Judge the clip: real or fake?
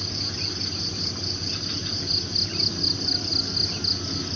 real